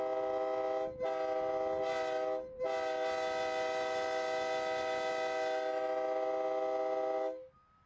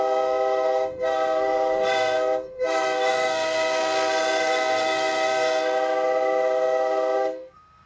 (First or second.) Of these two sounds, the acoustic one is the first